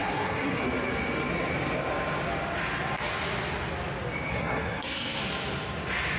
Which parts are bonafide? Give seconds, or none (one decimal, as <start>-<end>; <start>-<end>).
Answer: 0.6-4.3; 5.2-6.2

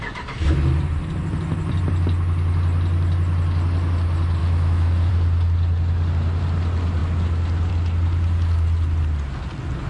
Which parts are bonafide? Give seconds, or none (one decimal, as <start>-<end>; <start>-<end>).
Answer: 0.0-4.4; 5.1-9.9